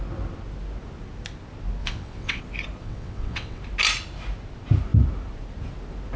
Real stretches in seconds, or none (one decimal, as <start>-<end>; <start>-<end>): 0.0-1.8; 2.4-2.8; 3.6-6.2